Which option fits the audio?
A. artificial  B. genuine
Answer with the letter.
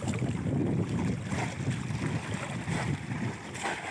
B